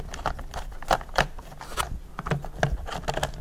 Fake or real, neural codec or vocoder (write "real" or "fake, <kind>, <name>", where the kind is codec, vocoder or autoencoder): real